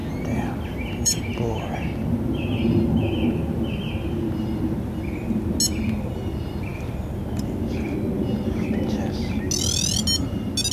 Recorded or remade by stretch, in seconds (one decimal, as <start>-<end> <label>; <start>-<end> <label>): 0.0-1.2 remade; 1.2-10.7 recorded